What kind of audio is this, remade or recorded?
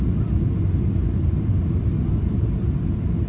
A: recorded